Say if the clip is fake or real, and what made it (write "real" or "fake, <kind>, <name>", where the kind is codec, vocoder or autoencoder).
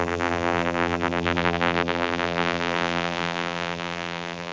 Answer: fake, vocoder, BigVGAN v2